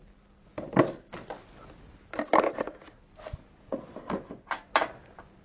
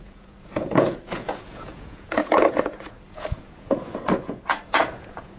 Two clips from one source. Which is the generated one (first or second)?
second